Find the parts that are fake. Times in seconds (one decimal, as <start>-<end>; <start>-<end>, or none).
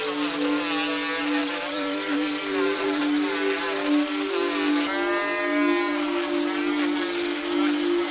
1.4-3.0